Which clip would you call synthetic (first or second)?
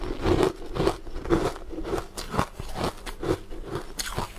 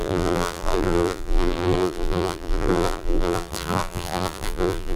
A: second